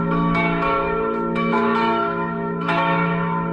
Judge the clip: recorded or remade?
remade